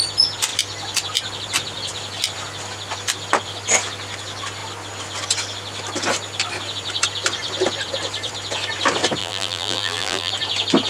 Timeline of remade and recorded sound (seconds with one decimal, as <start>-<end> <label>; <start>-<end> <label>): 0.0-9.2 recorded; 9.2-10.3 remade; 10.3-10.9 recorded